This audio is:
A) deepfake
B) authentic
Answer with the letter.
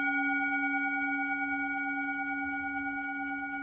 B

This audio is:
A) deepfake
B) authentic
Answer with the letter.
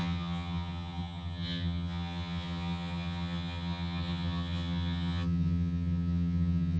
A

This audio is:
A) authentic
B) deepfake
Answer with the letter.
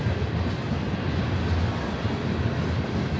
A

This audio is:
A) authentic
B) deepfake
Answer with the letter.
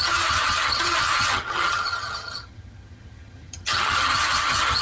B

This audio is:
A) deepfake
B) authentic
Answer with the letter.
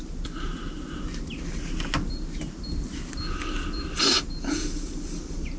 B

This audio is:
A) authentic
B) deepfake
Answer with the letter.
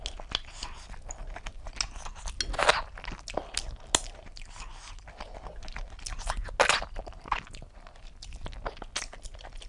A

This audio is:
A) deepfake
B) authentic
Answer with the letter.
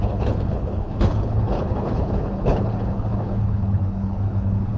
A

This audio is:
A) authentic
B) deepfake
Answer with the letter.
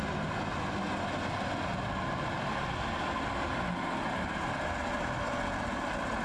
A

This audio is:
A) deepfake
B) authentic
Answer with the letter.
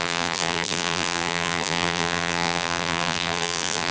A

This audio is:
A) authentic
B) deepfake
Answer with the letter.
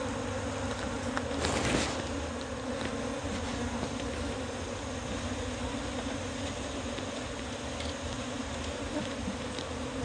A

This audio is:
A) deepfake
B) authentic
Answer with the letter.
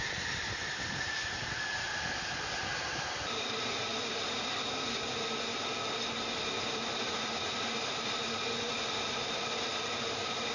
A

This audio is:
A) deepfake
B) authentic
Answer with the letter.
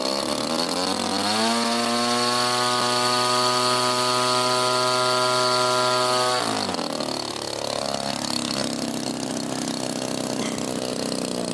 B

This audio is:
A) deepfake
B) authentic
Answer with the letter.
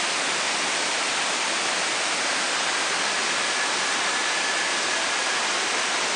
B